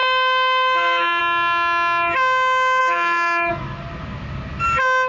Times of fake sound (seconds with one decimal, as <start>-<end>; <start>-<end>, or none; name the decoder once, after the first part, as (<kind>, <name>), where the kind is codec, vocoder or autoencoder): 0.0-1.2 (autoencoder, DAC-VAE); 2.8-3.5